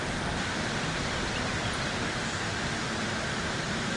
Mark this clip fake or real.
real